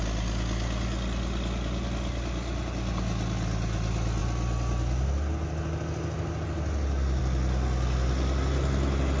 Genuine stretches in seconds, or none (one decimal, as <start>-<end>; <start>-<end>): 0.0-9.2